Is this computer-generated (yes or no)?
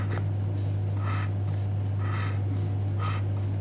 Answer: no